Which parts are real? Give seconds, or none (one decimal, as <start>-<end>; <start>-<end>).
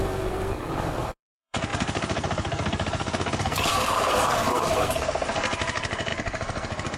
none